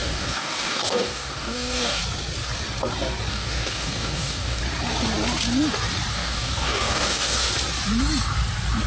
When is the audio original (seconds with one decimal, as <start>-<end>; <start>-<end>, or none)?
2.0-3.3; 4.6-6.1; 7.5-8.9